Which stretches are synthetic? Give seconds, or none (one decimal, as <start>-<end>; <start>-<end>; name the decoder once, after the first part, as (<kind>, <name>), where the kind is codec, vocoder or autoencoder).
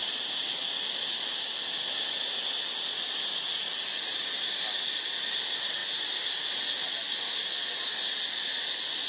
none